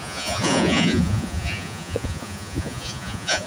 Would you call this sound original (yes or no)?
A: no